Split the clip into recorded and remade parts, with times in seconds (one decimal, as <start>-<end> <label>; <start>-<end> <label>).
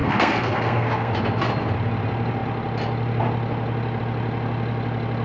0.0-1.1 remade; 1.1-5.2 recorded